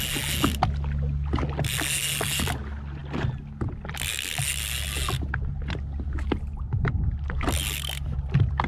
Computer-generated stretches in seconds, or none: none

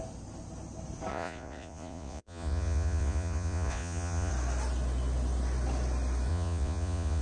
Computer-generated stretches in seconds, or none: 1.1-4.3 (vocoder, Vocos); 6.3-7.2